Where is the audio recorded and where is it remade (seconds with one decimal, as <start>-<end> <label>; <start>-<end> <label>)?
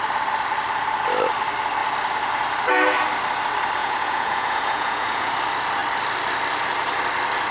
0.0-3.8 recorded; 3.8-5.3 remade; 5.3-7.5 recorded